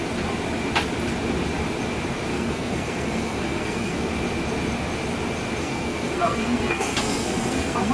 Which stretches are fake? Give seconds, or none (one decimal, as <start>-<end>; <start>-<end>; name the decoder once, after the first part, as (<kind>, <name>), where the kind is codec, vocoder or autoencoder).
2.3-4.1 (codec, SNAC); 5.6-7.9